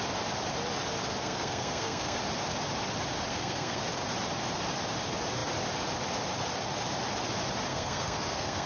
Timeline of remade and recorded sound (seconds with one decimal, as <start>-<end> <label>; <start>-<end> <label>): 0.0-1.2 recorded; 1.2-2.2 remade; 2.2-3.3 recorded; 3.3-3.8 remade; 3.8-7.7 recorded; 7.7-8.7 remade